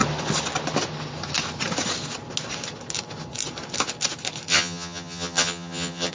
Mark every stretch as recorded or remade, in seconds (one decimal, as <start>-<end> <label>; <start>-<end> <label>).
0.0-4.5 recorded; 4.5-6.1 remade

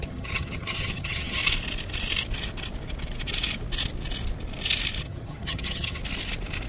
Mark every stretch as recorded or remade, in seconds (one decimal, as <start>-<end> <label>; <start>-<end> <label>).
0.0-1.4 remade; 1.4-5.0 recorded; 5.0-6.0 remade; 6.0-6.7 recorded

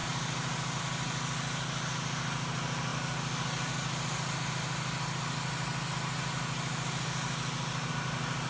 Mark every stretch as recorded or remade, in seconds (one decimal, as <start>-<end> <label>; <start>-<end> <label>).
0.0-8.5 recorded